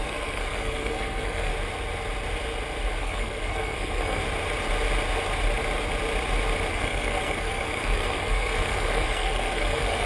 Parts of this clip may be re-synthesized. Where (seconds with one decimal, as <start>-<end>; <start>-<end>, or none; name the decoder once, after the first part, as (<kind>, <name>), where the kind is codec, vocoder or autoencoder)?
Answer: 0.0-1.5 (codec, SNAC); 3.0-4.2; 6.7-10.1